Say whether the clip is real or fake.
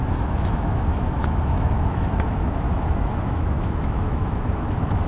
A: fake